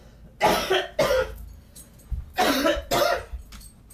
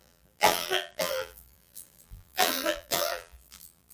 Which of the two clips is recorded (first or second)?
first